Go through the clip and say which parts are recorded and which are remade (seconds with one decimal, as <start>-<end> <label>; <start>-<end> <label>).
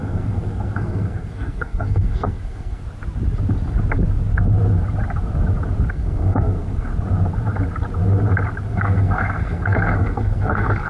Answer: 0.0-2.8 remade; 2.8-5.9 recorded; 5.9-6.9 remade; 6.9-8.7 recorded; 8.7-10.9 remade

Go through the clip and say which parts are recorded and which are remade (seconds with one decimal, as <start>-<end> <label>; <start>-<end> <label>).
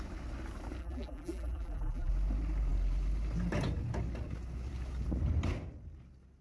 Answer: 0.0-0.8 recorded; 0.8-2.1 remade; 2.1-6.4 recorded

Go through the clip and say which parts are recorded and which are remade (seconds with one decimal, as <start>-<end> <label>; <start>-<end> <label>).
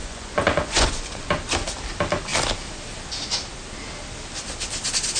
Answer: 0.0-1.3 remade; 1.3-5.2 recorded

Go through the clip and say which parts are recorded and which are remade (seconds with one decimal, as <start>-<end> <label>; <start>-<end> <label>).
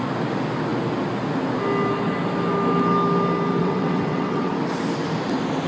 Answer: 0.0-3.6 recorded; 3.6-4.5 remade; 4.5-5.7 recorded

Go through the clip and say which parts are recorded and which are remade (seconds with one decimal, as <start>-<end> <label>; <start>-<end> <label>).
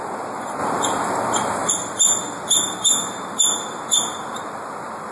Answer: 0.0-0.6 recorded; 0.6-1.7 remade; 1.7-5.1 recorded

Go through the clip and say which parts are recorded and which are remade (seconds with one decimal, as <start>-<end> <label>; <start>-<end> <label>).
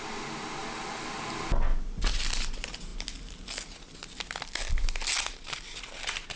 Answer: 0.0-6.4 recorded